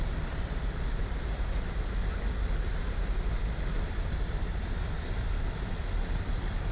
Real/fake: real